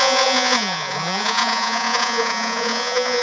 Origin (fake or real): fake